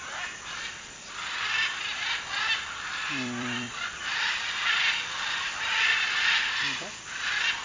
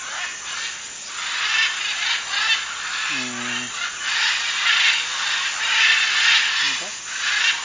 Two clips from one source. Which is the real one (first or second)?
second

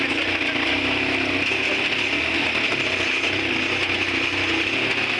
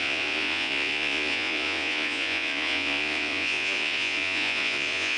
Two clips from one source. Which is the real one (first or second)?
first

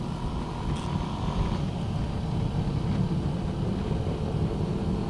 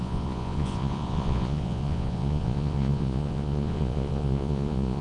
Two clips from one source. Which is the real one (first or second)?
first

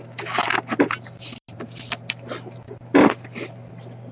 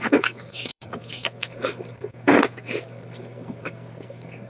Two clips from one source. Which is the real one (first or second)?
first